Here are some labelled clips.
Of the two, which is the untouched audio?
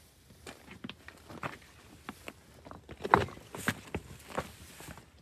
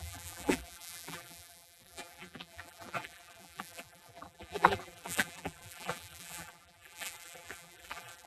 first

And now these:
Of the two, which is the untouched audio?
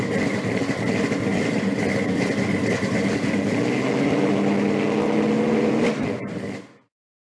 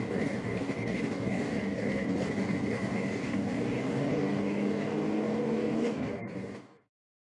first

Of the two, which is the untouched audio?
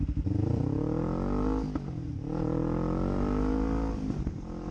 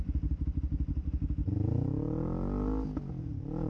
second